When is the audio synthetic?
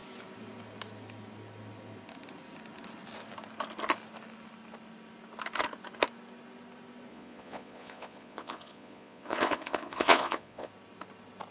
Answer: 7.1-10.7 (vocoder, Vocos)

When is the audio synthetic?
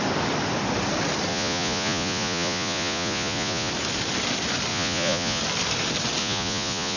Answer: 1.3-3.7 (vocoder, Vocos); 4.7-5.4; 6.2-7.0